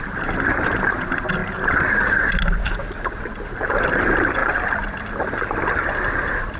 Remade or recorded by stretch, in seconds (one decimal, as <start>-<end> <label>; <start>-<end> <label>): 0.0-2.6 recorded; 2.6-3.2 remade; 3.2-6.6 recorded